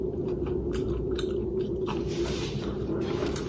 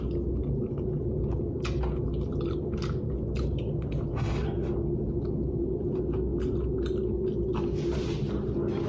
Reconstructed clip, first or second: first